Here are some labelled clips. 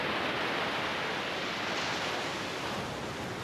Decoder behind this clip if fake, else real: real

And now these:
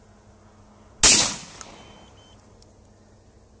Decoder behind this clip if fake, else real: real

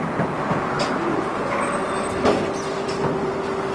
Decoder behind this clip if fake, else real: real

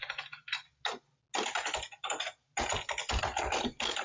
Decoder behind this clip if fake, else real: real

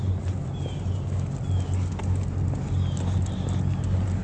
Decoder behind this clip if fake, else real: real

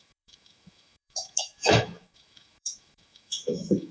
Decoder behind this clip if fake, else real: fake, autoencoder, DAC-VAE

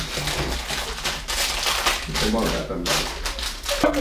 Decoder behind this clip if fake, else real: real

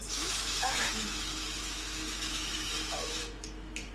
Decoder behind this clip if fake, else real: fake, autoencoder, DAC-VAE